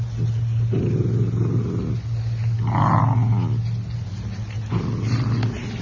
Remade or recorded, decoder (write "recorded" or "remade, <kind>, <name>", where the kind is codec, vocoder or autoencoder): recorded